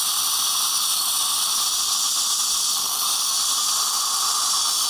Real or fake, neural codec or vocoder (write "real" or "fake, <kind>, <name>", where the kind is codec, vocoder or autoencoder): real